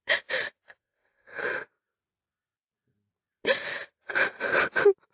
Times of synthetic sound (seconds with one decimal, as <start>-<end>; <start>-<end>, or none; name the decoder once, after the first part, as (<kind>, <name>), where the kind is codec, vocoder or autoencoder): 0.6-1.7 (codec, SNAC)